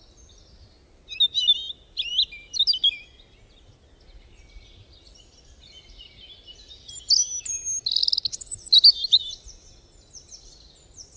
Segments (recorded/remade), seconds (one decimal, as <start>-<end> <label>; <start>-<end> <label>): 0.0-11.2 recorded